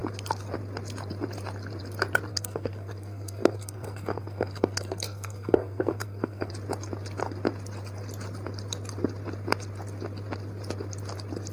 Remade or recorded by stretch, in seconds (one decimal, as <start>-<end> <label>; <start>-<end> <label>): 0.0-2.3 recorded; 2.3-6.5 remade; 6.5-11.5 recorded